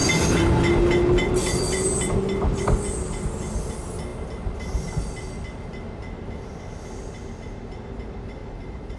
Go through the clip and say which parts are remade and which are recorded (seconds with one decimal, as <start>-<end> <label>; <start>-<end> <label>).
0.0-8.4 recorded; 8.4-9.0 remade